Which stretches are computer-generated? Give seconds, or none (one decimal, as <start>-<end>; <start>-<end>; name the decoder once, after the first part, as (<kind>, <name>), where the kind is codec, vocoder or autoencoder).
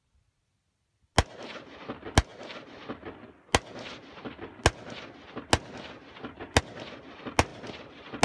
none